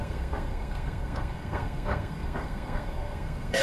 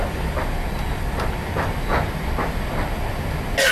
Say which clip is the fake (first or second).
first